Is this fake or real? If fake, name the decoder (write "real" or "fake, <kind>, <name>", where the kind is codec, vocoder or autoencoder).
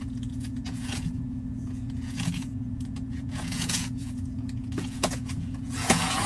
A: fake, vocoder, Vocos